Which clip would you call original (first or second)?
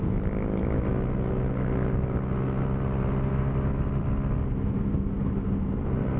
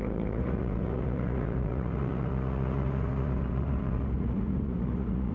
first